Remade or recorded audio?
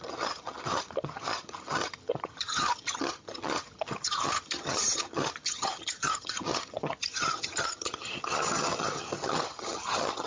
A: remade